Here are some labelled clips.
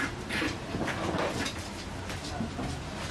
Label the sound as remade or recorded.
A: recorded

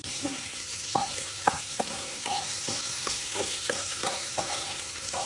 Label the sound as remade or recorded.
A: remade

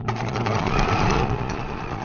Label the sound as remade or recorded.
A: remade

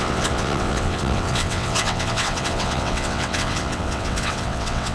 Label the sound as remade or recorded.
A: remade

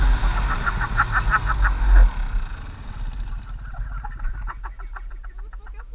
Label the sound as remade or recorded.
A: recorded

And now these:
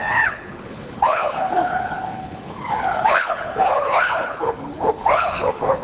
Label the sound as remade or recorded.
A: remade